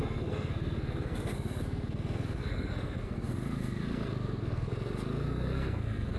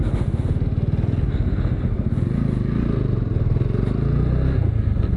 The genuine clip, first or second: second